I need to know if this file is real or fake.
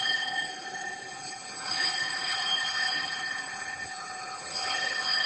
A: fake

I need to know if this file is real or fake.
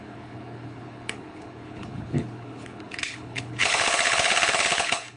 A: fake